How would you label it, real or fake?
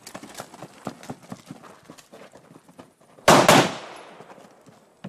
real